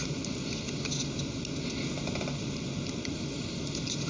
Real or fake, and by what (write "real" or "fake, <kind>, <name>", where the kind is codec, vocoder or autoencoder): real